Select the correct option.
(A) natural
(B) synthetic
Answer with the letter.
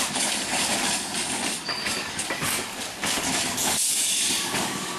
B